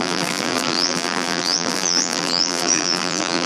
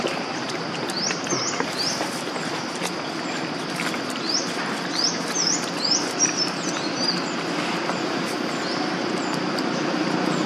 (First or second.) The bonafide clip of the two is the second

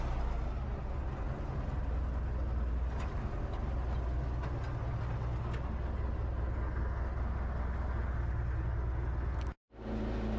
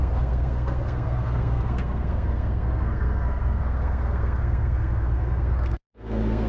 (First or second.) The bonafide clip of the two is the first